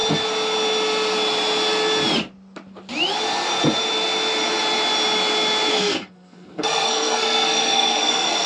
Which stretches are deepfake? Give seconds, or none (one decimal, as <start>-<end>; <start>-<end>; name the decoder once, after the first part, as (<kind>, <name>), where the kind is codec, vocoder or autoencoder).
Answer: 5.7-8.5 (codec, SNAC)